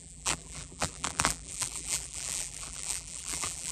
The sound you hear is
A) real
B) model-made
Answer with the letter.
B